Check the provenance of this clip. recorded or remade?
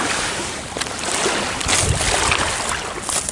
recorded